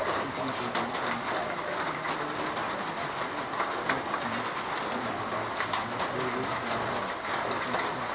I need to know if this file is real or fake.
real